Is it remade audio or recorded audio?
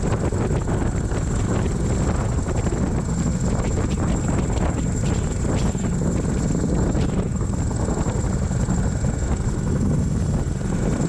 recorded